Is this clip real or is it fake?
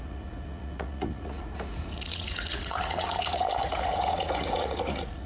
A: fake